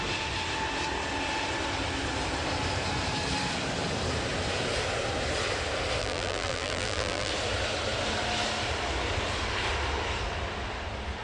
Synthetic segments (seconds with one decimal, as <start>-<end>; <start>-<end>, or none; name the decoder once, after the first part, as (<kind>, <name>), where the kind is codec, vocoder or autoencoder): 6.0-7.3 (vocoder, BigVGAN v2)